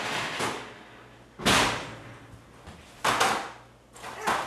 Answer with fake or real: real